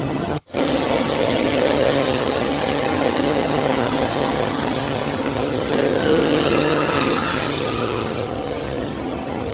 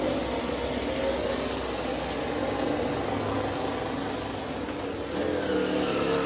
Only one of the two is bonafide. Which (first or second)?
second